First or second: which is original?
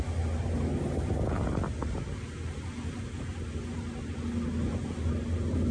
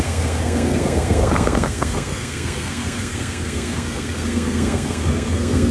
first